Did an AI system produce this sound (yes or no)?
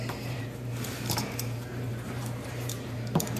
yes